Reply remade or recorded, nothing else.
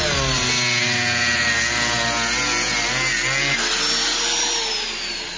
recorded